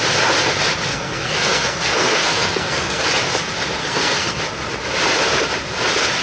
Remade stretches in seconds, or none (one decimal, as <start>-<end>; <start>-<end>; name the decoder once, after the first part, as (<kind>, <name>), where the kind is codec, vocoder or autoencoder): 0.9-3.1 (codec, SNAC); 3.8-4.4